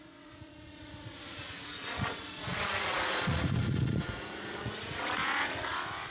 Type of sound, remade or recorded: remade